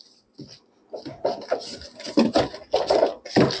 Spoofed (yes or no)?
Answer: no